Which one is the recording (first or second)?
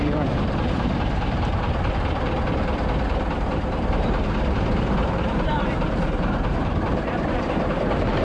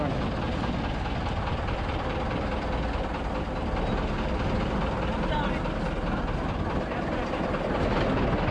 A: second